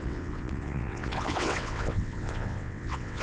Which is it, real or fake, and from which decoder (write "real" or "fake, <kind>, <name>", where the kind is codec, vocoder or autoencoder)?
fake, vocoder, WaveNeXt